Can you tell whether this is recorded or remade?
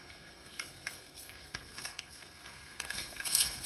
remade